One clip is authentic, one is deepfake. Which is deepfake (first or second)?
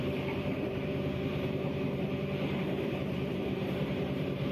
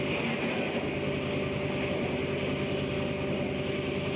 first